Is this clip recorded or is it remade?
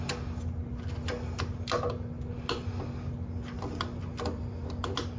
recorded